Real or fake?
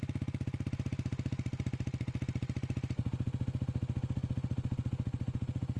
real